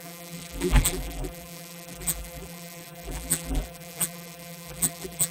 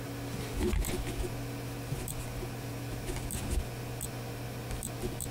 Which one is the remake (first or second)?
first